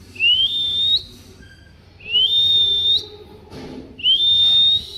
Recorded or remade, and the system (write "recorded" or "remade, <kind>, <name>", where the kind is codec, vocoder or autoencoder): recorded